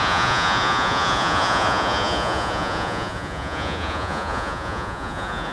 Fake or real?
fake